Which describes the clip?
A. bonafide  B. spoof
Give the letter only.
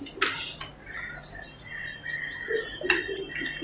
A